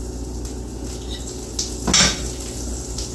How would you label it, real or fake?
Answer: real